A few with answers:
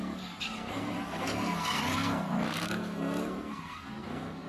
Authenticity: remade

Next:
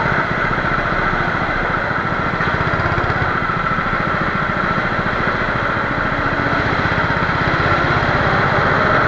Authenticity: recorded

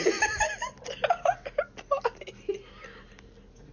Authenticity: recorded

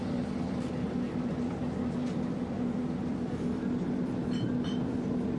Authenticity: recorded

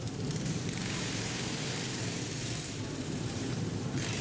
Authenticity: remade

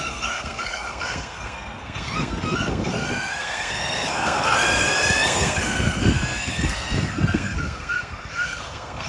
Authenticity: remade